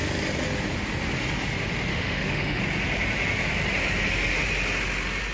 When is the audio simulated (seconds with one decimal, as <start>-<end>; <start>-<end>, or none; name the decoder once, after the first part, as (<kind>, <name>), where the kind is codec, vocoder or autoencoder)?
1.9-2.6 (autoencoder, DAC-VAE)

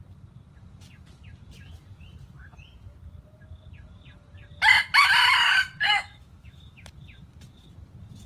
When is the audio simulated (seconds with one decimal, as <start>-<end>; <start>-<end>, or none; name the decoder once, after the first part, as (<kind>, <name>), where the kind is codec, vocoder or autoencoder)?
5.9-6.9 (autoencoder, DAC-VAE)

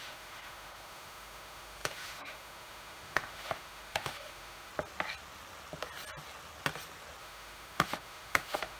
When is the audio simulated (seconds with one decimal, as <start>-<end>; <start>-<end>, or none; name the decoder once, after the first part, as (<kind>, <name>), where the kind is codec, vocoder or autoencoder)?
0.0-4.7 (autoencoder, DAC-VAE); 7.2-8.8